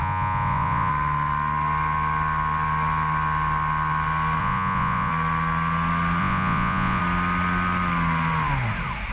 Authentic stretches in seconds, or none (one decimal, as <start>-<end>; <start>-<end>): 0.9-4.4; 5.1-6.2; 7.0-9.1